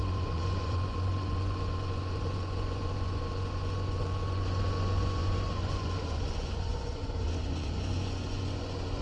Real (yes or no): no